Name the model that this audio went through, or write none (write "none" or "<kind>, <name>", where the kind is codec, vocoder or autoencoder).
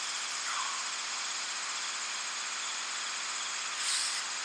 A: none